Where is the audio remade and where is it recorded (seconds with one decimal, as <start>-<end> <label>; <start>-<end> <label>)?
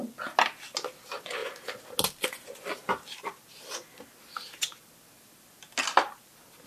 0.0-6.7 recorded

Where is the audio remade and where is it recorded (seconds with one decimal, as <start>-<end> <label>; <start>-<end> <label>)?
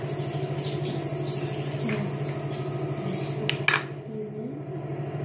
0.0-5.2 recorded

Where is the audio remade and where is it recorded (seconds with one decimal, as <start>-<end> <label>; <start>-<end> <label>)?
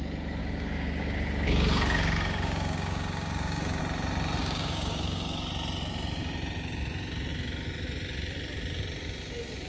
0.0-0.4 recorded; 0.4-3.8 remade; 3.8-4.4 recorded; 4.4-5.5 remade; 5.5-9.7 recorded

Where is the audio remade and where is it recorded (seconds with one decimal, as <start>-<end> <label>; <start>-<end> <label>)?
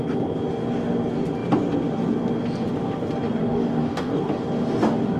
0.0-3.4 recorded; 3.4-4.2 remade; 4.2-5.2 recorded